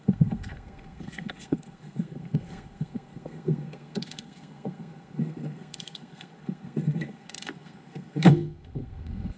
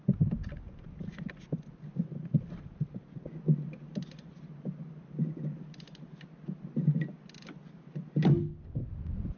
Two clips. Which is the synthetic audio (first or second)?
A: first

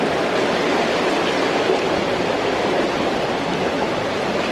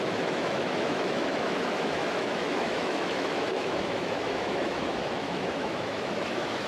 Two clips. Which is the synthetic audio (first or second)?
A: second